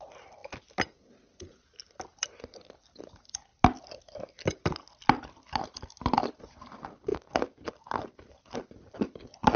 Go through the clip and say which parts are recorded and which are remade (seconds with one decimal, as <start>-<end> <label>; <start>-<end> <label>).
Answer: 0.0-0.4 remade; 0.4-1.4 recorded; 1.4-3.5 remade; 3.5-5.0 recorded; 5.0-9.6 remade